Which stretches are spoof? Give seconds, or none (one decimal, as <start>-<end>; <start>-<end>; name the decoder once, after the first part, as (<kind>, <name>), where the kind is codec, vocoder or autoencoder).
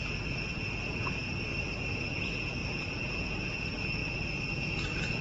0.0-1.5 (vocoder, Vocos); 2.0-4.0; 4.6-5.2